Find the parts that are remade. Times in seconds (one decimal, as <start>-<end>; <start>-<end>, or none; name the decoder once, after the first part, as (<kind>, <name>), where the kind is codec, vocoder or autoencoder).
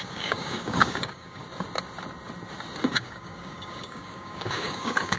0.0-1.4 (codec, DAC); 2.8-5.2